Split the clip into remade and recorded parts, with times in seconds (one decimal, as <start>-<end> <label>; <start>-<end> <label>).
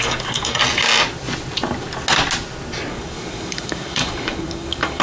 0.0-0.6 remade; 0.6-2.9 recorded; 2.9-5.0 remade